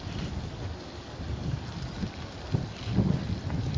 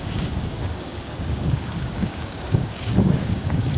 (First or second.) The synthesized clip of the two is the second